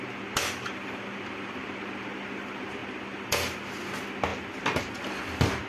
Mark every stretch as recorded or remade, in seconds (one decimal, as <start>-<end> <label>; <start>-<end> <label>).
0.0-5.7 recorded